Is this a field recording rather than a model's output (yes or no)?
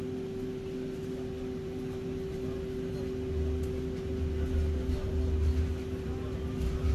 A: yes